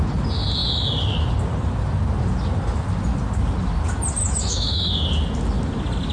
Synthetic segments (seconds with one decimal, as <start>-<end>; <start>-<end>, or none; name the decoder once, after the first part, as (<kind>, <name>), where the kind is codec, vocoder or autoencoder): 4.2-4.9 (autoencoder, DAC-VAE)